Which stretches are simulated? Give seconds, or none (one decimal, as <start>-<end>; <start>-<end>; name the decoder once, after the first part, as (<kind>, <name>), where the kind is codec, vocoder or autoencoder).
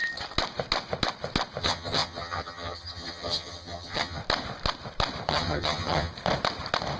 1.6-4.2 (vocoder, HiFi-GAN); 5.3-6.1